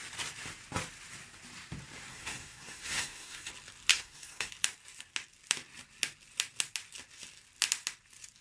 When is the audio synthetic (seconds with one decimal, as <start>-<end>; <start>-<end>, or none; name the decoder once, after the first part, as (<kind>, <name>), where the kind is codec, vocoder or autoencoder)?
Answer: 2.1-3.5 (codec, SNAC); 3.9-4.5